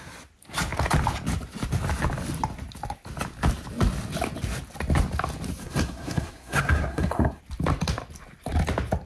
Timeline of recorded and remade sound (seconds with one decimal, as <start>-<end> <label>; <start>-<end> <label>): 0.0-5.6 recorded; 5.6-7.4 remade; 7.4-9.1 recorded